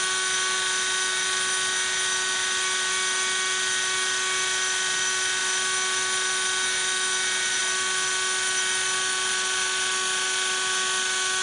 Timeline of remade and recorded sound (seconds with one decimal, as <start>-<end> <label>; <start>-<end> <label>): 0.0-11.4 recorded